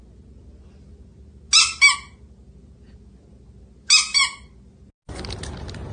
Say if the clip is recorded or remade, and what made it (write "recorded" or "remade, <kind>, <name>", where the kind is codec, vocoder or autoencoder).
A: recorded